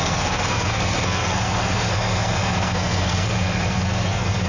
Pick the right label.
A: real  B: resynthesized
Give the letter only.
B